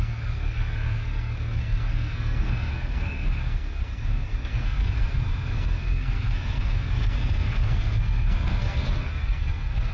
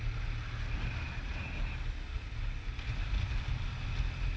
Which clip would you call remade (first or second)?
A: first